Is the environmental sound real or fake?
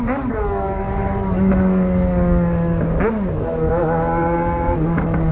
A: fake